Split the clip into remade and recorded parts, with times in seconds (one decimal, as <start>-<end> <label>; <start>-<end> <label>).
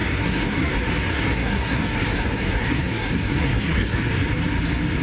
0.0-0.7 remade; 0.7-1.1 recorded; 1.1-4.1 remade; 4.1-5.0 recorded